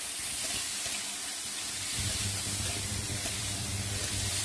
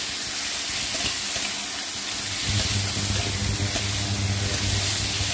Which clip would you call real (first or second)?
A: second